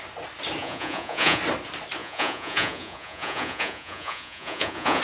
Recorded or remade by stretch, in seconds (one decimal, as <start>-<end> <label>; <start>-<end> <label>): 0.0-0.6 recorded; 0.6-1.4 remade; 1.4-2.0 recorded; 2.0-5.0 remade